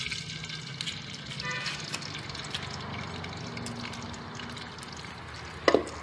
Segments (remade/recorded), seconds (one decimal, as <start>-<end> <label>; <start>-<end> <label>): 0.0-6.0 recorded